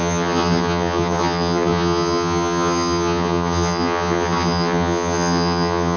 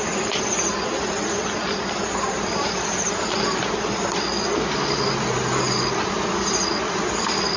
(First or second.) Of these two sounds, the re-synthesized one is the first